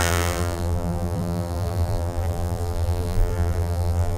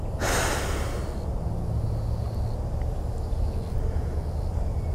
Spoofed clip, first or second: first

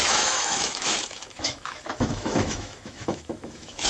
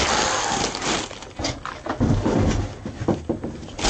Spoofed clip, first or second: first